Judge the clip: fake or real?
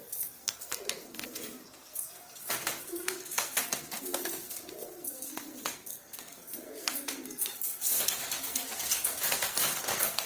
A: fake